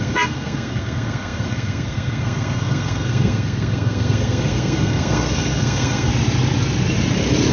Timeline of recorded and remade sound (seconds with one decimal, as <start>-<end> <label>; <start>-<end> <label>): 0.0-6.1 remade; 6.1-7.5 recorded